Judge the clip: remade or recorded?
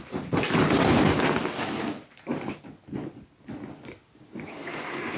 recorded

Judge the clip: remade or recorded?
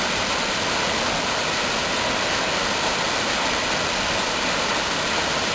recorded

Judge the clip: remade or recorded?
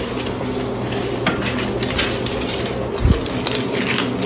recorded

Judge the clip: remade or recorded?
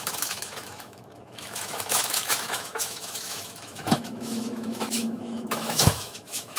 remade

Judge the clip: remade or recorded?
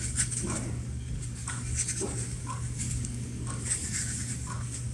remade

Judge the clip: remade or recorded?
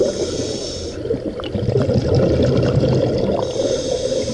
recorded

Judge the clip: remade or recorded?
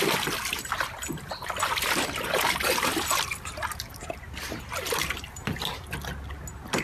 recorded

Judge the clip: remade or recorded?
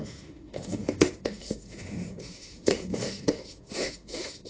remade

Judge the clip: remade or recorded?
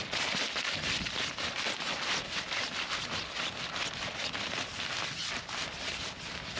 recorded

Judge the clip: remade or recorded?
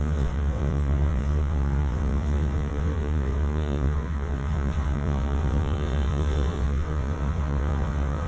remade